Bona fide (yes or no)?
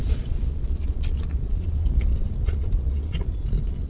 no